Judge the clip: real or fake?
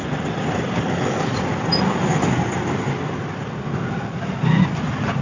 real